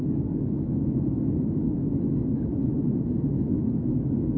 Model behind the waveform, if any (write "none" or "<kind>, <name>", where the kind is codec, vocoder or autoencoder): autoencoder, DAC-VAE